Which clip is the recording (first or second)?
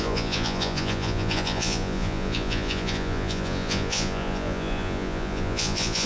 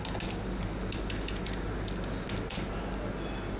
second